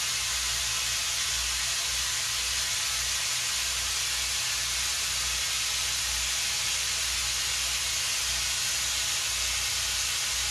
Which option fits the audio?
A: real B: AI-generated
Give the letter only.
A